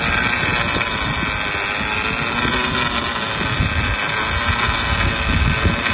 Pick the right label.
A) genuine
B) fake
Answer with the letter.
A